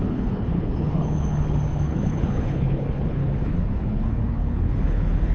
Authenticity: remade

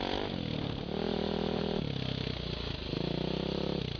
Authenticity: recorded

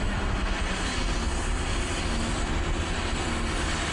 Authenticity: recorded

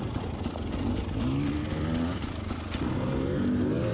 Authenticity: recorded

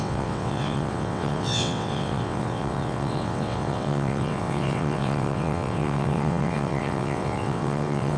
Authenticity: remade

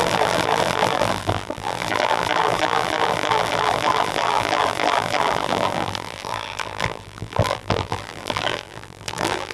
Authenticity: remade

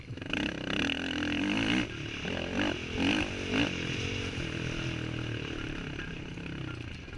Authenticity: recorded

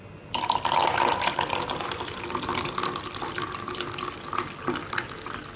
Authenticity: recorded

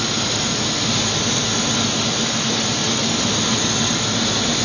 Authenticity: recorded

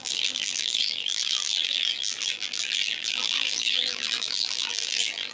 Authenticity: remade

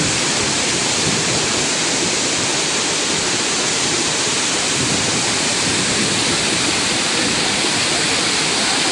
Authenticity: remade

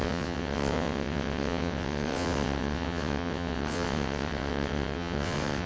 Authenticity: remade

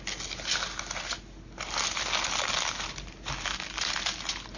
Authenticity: recorded